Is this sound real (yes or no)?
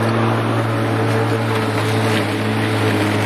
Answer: yes